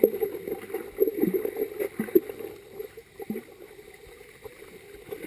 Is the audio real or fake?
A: real